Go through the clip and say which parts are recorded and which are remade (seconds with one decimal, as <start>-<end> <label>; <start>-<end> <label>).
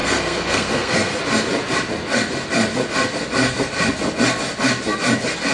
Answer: 0.0-1.2 remade; 1.2-5.5 recorded